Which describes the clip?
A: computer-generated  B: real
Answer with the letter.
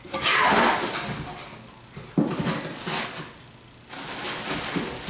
B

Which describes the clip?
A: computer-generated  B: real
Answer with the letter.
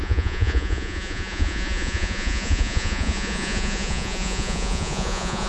A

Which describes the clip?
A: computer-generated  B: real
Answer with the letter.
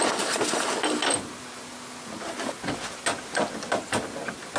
B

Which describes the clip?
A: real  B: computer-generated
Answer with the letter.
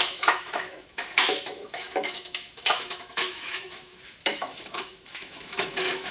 B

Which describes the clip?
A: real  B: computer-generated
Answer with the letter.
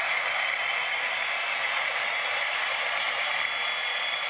A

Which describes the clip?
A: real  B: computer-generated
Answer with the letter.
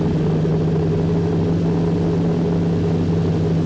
A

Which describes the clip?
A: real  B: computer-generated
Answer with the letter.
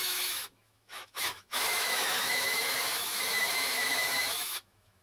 B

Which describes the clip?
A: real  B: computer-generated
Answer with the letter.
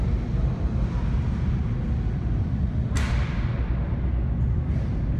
A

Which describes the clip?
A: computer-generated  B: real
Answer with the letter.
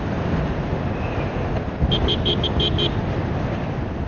B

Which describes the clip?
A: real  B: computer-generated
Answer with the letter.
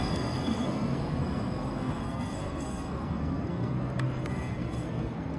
B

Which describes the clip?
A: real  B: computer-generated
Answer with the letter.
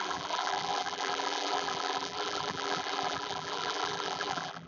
B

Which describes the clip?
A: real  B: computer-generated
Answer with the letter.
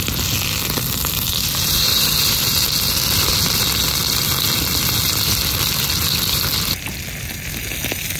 A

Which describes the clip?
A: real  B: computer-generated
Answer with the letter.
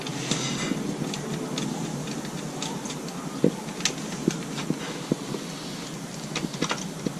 A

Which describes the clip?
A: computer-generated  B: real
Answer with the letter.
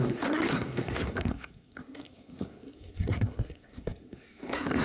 A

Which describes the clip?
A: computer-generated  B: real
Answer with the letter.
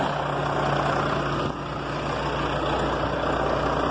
B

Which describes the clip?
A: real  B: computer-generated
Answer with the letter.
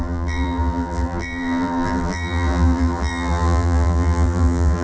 B